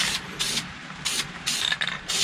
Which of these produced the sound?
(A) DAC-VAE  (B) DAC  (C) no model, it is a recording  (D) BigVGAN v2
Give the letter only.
D